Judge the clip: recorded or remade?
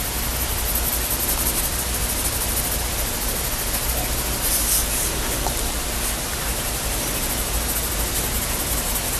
recorded